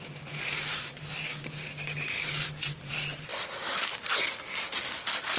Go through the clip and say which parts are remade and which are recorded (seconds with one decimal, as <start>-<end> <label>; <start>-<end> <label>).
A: 0.0-1.3 recorded; 1.3-2.5 remade; 2.5-5.4 recorded